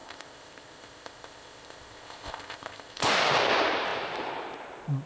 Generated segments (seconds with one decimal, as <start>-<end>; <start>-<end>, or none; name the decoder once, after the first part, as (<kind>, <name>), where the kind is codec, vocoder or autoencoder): 0.0-3.1 (codec, ZipCodec)